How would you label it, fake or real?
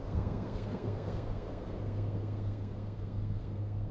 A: fake